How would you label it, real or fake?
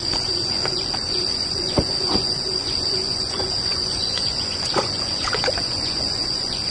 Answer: fake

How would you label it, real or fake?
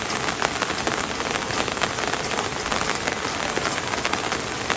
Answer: real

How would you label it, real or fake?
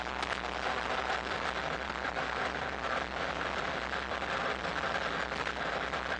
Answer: real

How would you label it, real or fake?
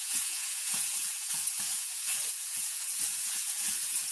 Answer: fake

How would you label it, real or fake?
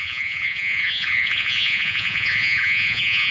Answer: fake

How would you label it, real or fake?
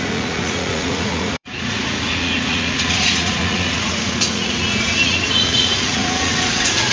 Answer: fake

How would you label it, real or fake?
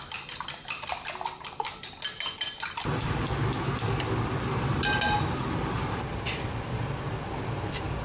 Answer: real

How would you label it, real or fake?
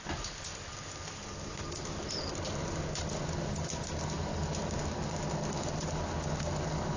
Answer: real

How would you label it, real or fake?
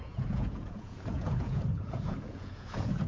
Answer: fake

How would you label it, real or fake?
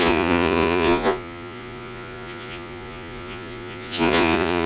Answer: fake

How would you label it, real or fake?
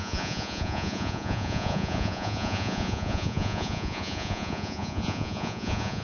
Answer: fake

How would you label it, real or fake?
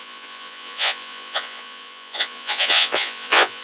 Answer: fake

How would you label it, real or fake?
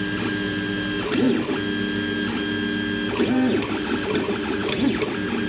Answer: real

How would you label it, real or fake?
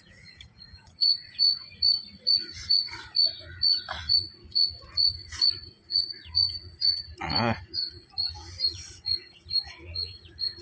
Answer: fake